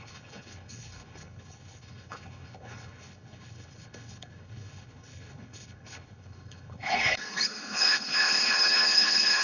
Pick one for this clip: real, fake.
fake